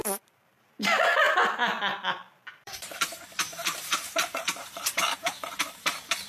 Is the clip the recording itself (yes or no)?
no